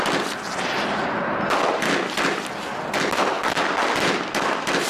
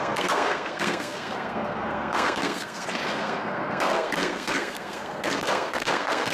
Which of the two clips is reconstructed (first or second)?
second